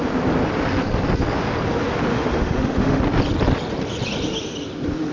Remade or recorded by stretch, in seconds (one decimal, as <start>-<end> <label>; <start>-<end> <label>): 0.0-2.1 recorded; 2.1-3.0 remade; 3.0-5.1 recorded